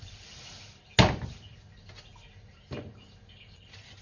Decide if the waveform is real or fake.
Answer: real